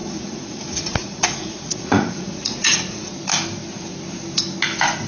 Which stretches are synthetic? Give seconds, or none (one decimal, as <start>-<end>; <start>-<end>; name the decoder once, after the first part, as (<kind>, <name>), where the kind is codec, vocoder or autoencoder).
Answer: 0.0-3.1 (vocoder, Vocos)